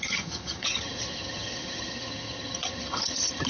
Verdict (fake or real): fake